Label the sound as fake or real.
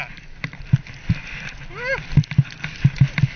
real